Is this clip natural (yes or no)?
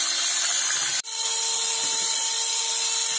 yes